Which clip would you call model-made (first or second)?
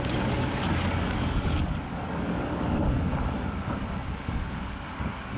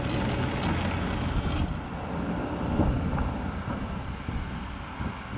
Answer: first